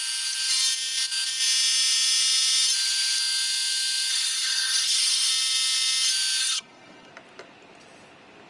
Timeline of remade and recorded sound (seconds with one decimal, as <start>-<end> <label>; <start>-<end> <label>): 0.0-4.1 recorded; 4.1-5.3 remade; 5.3-6.4 recorded; 6.4-7.1 remade; 7.1-8.5 recorded